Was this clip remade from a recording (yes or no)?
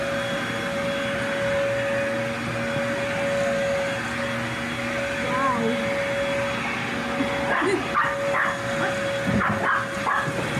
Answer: no